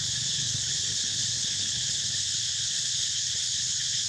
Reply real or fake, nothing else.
fake